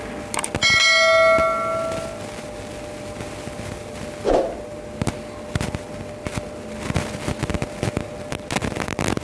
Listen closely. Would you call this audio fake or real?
real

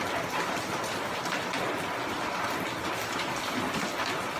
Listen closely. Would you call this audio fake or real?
real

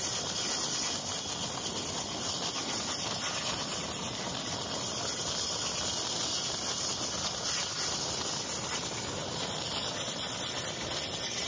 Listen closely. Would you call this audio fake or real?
real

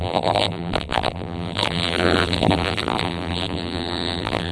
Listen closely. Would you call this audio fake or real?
fake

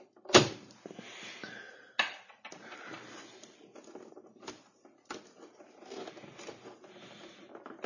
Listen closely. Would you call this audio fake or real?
real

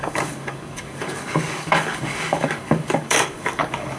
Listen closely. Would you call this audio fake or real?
fake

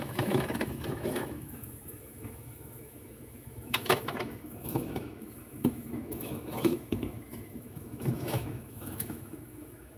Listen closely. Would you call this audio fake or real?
fake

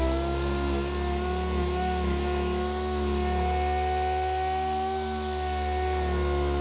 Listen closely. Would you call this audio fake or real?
real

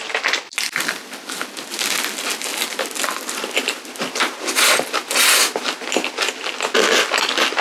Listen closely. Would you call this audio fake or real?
real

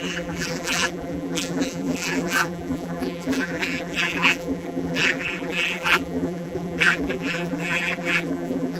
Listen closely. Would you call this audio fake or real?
fake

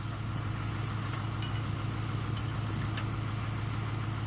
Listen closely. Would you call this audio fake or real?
real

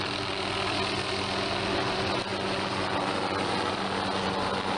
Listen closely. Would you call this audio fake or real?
real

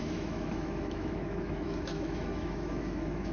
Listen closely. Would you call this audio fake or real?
fake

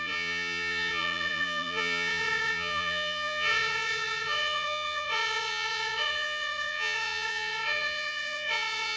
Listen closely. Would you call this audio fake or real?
fake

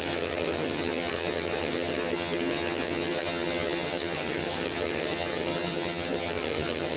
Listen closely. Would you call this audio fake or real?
fake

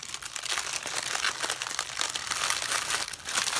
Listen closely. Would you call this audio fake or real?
real